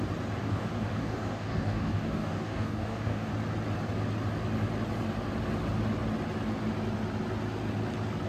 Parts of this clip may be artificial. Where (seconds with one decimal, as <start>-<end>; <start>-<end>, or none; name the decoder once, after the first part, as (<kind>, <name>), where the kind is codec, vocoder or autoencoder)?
0.4-3.3 (codec, DAC)